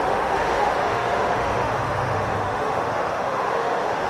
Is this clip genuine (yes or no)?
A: no